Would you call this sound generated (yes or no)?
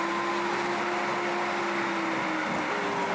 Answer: no